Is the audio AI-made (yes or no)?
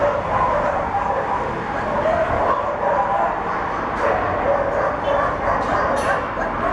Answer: no